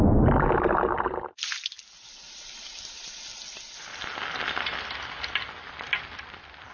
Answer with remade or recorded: recorded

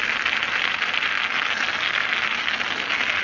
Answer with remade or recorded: recorded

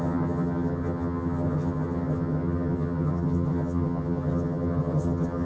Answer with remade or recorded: remade